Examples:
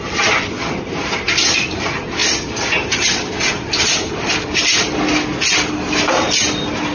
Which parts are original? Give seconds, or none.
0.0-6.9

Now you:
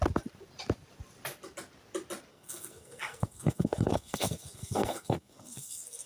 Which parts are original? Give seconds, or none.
0.0-2.3

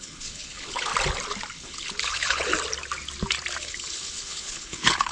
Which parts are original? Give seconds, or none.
0.9-1.5; 2.5-3.6

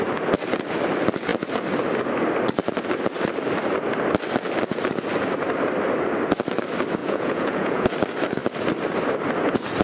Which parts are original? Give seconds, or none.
0.0-7.0; 7.9-9.8

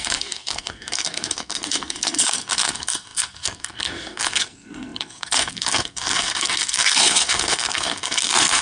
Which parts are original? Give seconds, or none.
none

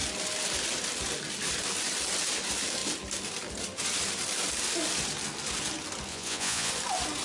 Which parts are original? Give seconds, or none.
0.0-6.1; 6.7-7.2